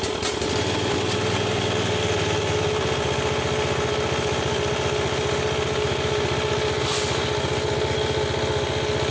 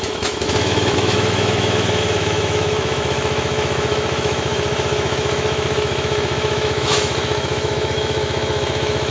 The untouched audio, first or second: first